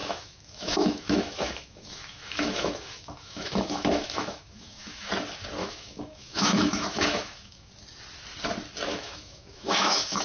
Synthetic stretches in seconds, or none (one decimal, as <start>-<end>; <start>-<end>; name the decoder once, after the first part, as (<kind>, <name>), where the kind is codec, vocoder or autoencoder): 0.0-5.1 (autoencoder, DAC-VAE); 5.6-7.7; 8.9-10.2